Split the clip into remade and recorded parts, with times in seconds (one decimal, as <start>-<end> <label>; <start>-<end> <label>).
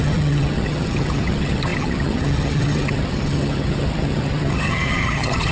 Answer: 0.0-5.5 remade